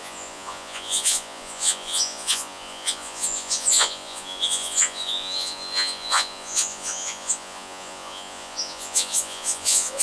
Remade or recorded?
remade